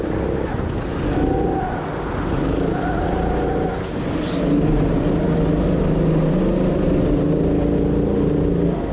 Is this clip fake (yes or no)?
no